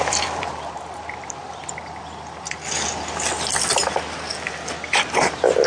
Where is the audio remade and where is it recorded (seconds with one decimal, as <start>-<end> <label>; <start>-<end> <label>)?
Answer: 0.0-1.6 remade; 1.6-5.0 recorded; 5.0-5.7 remade